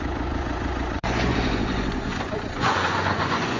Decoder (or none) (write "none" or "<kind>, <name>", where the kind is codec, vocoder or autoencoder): vocoder, Vocos